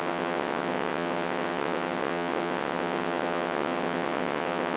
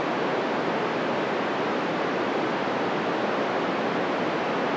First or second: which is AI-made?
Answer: first